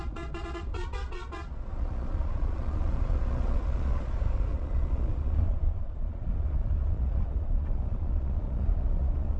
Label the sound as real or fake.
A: fake